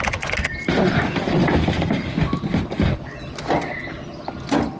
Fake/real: real